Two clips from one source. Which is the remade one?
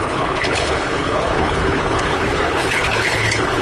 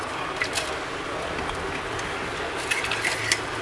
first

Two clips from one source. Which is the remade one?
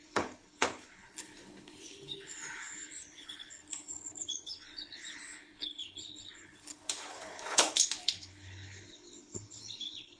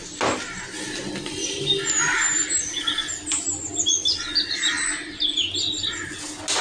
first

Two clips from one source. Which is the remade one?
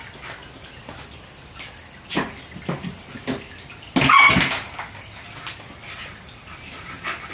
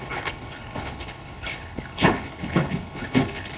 second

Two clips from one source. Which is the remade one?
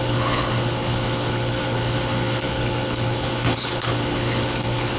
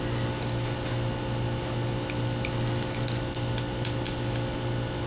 first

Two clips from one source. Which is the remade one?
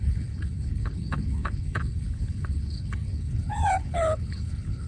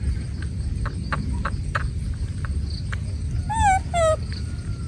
first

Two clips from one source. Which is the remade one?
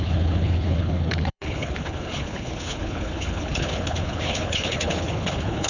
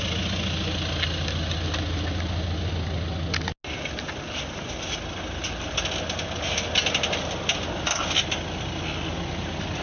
first